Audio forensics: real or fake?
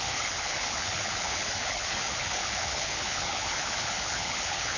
fake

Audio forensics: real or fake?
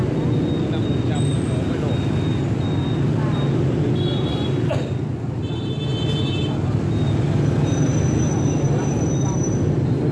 real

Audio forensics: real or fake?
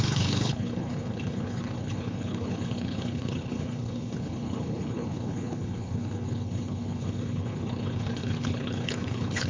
fake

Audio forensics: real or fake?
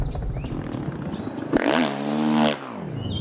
real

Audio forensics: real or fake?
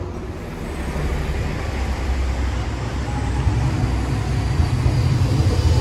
real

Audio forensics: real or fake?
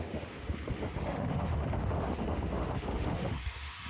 fake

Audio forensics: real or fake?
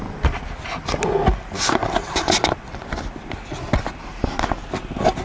real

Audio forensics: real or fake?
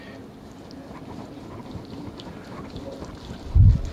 real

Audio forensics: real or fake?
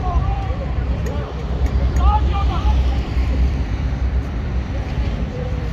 fake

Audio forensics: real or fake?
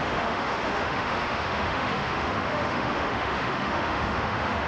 fake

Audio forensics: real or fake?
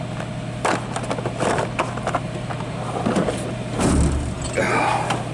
real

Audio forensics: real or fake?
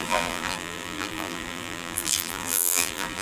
fake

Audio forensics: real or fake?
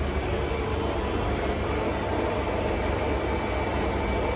real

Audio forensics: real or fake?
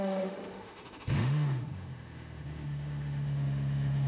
fake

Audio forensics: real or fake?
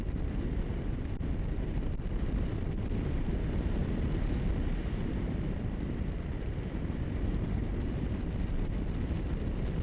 real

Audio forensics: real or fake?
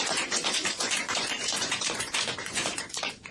fake